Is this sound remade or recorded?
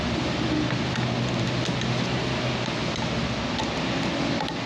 recorded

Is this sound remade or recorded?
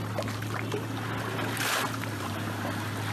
recorded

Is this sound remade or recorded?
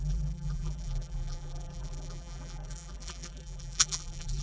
remade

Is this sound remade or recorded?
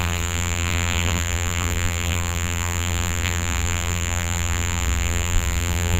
remade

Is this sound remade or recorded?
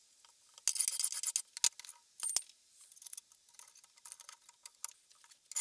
recorded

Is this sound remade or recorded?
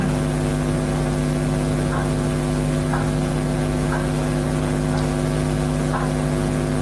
recorded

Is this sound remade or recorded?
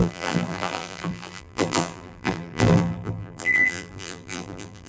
remade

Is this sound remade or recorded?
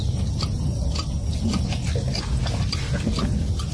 recorded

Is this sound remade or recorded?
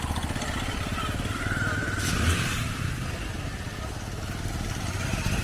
recorded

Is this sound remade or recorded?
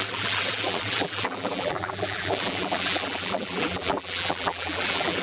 remade